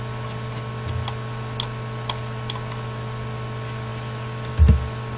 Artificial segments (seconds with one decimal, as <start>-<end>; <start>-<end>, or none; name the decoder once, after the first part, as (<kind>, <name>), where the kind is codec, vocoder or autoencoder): none